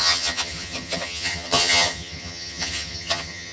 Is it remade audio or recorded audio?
remade